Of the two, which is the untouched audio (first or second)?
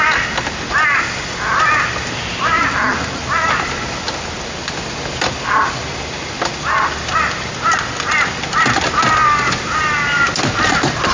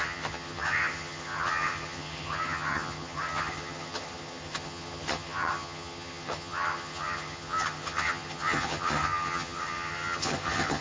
first